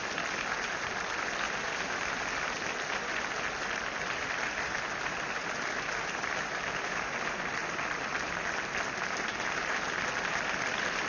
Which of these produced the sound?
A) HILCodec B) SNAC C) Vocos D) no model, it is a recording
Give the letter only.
D